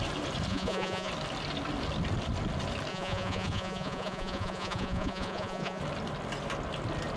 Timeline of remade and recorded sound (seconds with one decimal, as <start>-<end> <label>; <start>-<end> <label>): 0.0-0.5 recorded; 0.5-1.1 remade; 1.1-2.9 recorded; 2.9-5.8 remade; 5.8-7.2 recorded